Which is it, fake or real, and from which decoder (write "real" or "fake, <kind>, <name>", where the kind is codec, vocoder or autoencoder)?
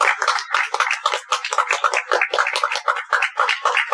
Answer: real